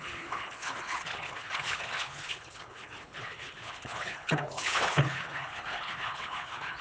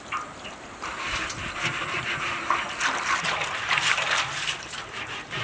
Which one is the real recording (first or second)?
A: second